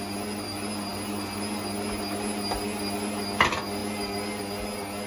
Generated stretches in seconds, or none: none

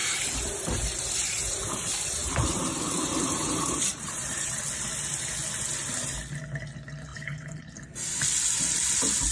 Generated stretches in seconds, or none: 0.0-4.6 (vocoder, BigVGAN v2); 7.1-7.7

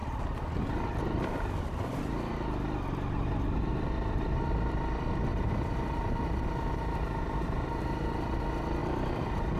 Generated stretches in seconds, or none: 5.3-8.4 (vocoder, BigVGAN v2); 8.8-9.6

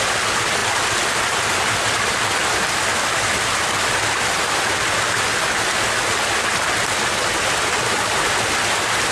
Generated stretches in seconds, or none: none

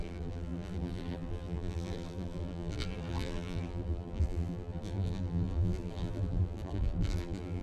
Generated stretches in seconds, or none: 0.0-7.6 (vocoder, BigVGAN v2)